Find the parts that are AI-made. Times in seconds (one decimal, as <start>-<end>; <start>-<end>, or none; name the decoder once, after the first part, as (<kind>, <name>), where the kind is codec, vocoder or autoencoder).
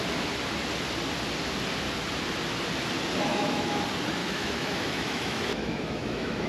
3.3-3.8 (autoencoder, DAC-VAE); 4.2-6.5